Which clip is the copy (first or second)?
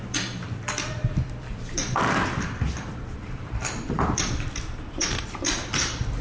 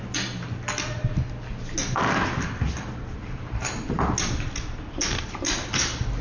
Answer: first